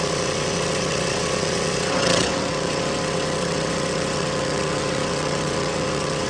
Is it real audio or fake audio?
fake